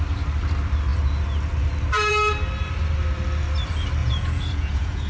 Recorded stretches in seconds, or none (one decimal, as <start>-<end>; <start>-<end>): 0.0-4.0